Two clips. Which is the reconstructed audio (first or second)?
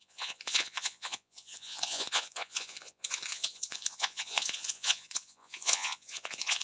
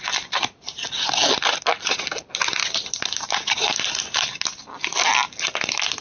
first